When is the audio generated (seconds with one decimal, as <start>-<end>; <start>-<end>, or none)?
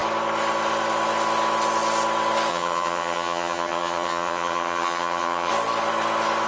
2.5-5.5